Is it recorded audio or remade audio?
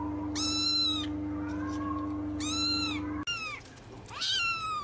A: recorded